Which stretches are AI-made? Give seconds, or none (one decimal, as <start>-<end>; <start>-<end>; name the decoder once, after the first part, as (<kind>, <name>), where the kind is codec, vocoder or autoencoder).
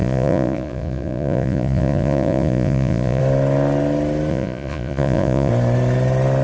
0.0-3.2 (vocoder, Vocos); 4.3-5.5